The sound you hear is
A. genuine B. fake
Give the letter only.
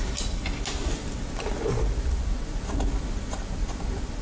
A